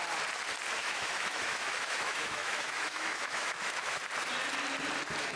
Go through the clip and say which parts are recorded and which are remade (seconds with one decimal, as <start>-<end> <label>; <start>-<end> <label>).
0.0-0.8 recorded; 0.8-4.0 remade; 4.0-5.4 recorded